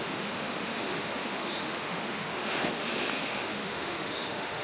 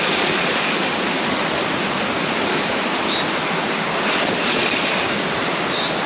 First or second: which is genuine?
second